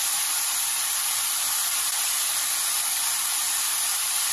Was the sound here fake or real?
fake